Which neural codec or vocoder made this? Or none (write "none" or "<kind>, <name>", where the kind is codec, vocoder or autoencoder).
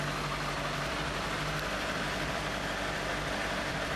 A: vocoder, BigVGAN v2